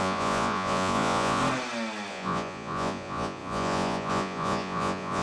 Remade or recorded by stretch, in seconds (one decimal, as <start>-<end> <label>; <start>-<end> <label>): 0.0-1.4 remade; 1.4-2.1 recorded; 2.1-5.2 remade